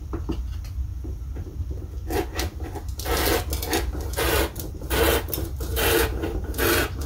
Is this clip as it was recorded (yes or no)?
yes